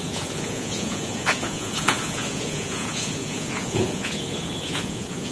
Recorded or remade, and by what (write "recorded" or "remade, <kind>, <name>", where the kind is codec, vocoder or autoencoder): remade, vocoder, Vocos